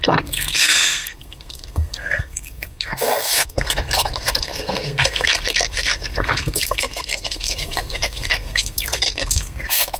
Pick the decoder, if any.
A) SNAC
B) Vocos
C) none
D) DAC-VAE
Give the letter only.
A